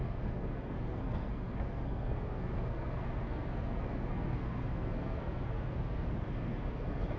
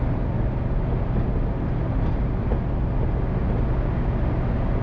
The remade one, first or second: first